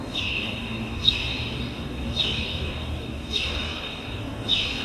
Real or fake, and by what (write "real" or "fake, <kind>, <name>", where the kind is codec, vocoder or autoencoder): fake, codec, DAC